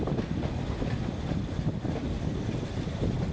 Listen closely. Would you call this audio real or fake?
real